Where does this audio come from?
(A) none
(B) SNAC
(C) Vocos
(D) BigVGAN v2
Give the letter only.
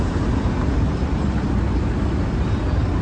D